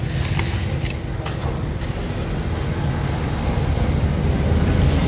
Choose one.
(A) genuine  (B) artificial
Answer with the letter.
A